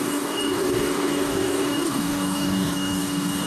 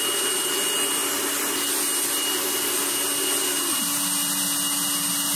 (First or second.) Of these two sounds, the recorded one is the second